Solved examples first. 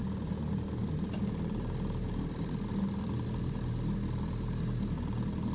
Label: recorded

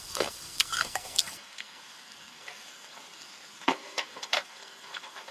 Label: remade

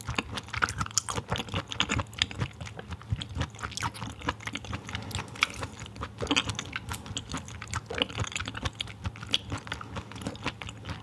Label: recorded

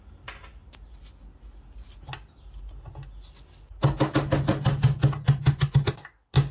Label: recorded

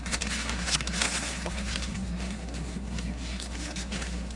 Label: remade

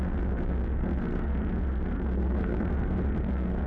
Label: remade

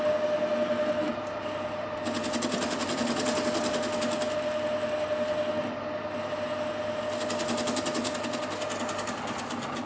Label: recorded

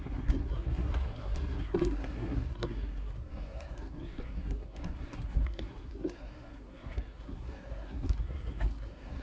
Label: remade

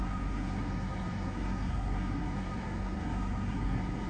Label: remade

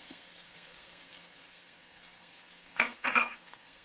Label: remade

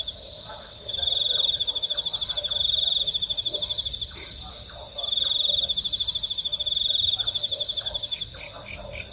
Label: recorded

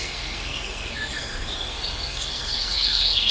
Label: remade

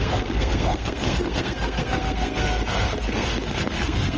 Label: remade